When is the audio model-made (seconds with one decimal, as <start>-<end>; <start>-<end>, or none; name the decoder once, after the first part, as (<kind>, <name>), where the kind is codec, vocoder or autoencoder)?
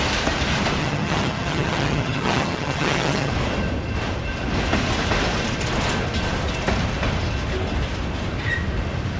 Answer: 0.8-3.3 (vocoder, HiFi-GAN)